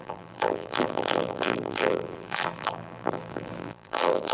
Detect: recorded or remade remade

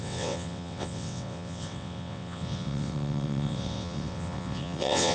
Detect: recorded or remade remade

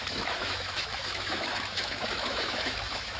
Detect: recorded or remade remade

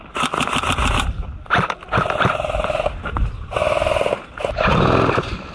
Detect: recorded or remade recorded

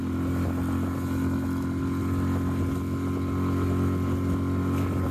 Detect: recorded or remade recorded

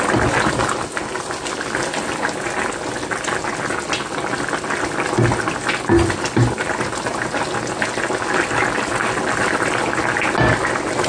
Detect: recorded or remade recorded